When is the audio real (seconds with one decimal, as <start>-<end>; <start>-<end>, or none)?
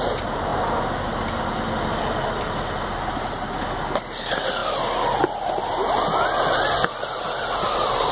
0.0-8.1